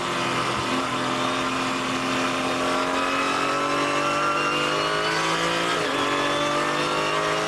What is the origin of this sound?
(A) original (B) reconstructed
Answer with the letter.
A